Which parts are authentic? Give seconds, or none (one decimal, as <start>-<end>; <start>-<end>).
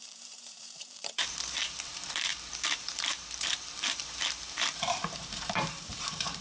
none